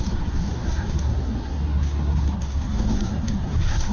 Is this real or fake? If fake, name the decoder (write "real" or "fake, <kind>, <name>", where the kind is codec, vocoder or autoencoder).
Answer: fake, codec, SNAC